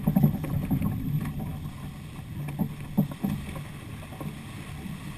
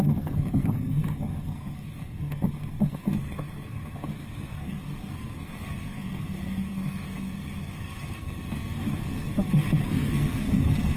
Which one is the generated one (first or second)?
second